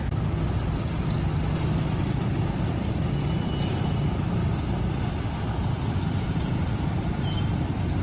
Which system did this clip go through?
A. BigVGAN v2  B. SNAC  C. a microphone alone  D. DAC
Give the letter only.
C